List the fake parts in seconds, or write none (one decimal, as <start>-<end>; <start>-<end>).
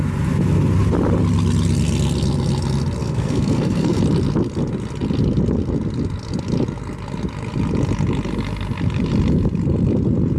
3.0-4.0